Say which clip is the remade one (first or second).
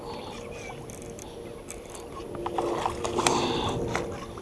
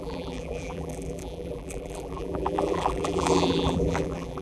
second